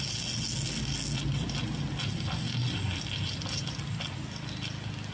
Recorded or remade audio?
recorded